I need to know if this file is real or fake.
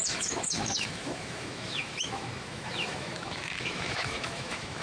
fake